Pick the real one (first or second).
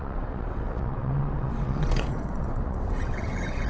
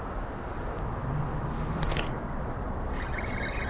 second